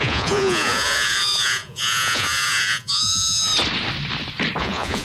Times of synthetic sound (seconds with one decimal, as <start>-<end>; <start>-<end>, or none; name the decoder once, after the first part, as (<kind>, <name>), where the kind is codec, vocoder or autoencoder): 0.0-3.5 (vocoder, Vocos); 4.6-5.0